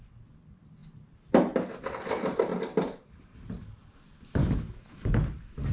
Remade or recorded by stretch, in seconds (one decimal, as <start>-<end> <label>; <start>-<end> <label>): 0.0-4.4 recorded; 4.4-5.1 remade; 5.1-5.7 recorded